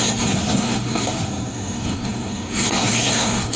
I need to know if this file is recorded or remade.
remade